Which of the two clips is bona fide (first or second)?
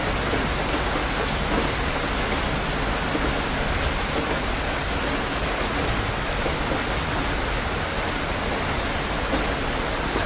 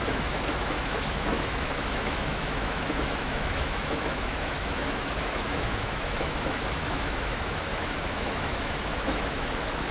first